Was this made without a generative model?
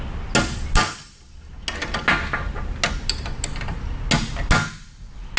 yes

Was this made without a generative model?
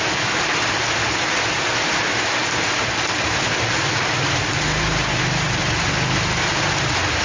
yes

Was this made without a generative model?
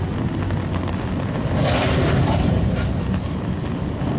yes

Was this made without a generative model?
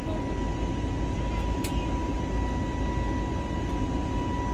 yes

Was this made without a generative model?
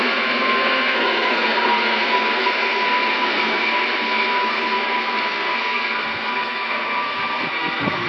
no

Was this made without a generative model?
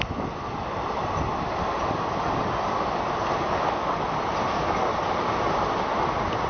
yes